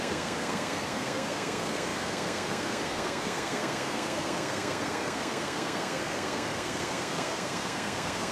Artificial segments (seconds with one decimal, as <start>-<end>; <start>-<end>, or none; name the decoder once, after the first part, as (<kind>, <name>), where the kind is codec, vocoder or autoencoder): 0.0-8.3 (codec, SNAC)